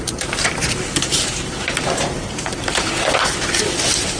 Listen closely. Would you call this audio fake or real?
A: fake